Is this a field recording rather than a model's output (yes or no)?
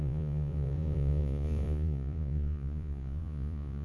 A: no